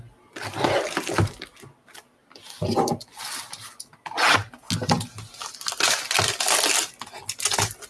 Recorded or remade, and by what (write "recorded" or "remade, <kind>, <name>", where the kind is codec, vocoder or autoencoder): recorded